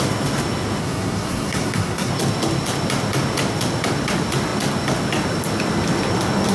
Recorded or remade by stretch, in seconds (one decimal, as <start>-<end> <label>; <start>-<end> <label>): 0.0-0.8 recorded; 0.8-2.1 remade; 2.1-6.5 recorded

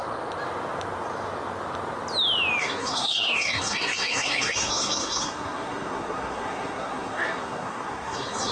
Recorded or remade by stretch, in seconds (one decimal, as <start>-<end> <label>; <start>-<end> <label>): 0.0-2.6 recorded; 2.6-8.5 remade

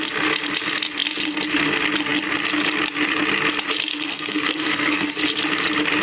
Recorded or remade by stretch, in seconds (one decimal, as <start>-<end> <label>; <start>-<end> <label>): 0.0-3.9 recorded; 3.9-5.1 remade; 5.1-6.0 recorded

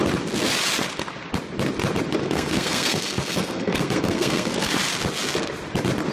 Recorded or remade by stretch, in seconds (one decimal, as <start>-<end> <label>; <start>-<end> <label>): 0.0-2.2 recorded; 2.2-4.7 remade; 4.7-6.1 recorded

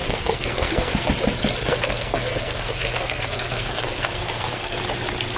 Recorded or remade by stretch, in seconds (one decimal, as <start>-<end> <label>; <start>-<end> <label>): 0.0-1.1 remade; 1.1-1.6 recorded; 1.6-4.8 remade; 4.8-5.4 recorded

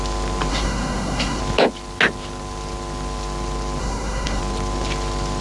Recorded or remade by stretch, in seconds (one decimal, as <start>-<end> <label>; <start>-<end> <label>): 0.0-0.5 recorded; 0.5-1.4 remade; 1.4-3.8 recorded; 3.8-4.4 remade; 4.4-5.4 recorded

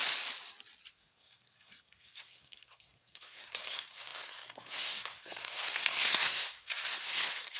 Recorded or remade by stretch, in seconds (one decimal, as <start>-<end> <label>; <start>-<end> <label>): 0.0-0.9 recorded; 0.9-7.6 remade

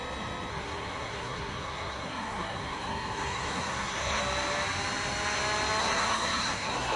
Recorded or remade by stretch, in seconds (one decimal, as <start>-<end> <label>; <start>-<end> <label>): 0.0-0.5 recorded; 0.5-4.2 remade; 4.2-5.8 recorded; 5.8-7.0 remade